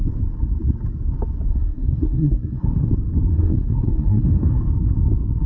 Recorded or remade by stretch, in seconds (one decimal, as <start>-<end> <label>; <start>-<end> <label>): 0.0-1.5 recorded; 1.5-2.9 remade; 2.9-3.3 recorded; 3.3-4.6 remade; 4.6-5.5 recorded